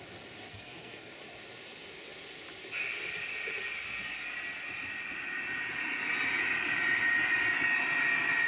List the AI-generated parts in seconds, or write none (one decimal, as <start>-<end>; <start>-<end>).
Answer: 0.5-1.1